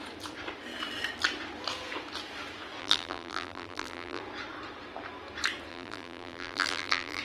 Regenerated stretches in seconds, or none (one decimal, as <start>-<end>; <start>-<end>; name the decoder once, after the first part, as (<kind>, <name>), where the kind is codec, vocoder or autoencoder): 2.8-4.2 (vocoder, BigVGAN v2); 5.7-7.2